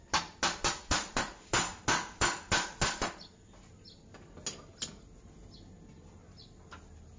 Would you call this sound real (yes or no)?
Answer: yes